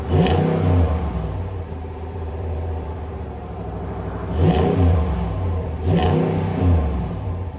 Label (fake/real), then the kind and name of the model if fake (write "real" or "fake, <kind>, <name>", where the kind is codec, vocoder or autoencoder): fake, vocoder, BigVGAN v2